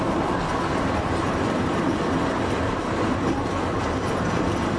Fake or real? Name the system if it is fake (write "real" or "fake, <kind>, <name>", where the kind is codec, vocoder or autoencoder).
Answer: fake, vocoder, BigVGAN v2